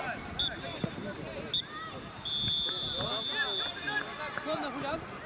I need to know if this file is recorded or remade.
recorded